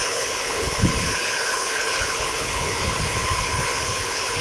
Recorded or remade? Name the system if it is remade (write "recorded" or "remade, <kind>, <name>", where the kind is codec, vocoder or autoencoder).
remade, codec, HILCodec